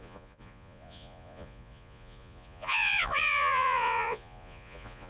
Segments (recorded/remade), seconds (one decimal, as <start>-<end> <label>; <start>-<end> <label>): 0.0-5.1 remade